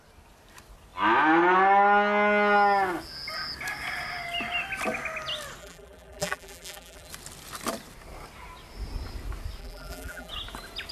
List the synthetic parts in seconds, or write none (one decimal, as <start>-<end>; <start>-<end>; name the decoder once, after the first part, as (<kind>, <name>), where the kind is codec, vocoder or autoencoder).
5.6-7.1 (vocoder, BigVGAN v2); 9.6-10.3